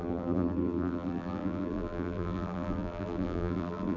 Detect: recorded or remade remade